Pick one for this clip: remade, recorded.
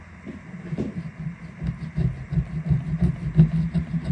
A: recorded